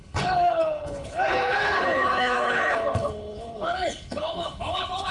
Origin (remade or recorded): remade